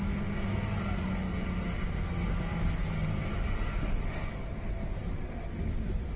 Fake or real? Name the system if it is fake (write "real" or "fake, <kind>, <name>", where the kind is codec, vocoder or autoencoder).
real